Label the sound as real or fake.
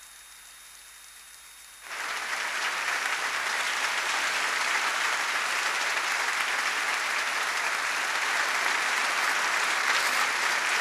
real